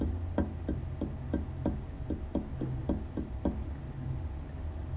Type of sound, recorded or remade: recorded